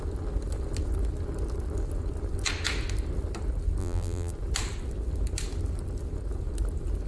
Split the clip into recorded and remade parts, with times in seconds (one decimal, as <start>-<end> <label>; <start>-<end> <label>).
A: 0.0-3.8 recorded; 3.8-4.3 remade; 4.3-7.1 recorded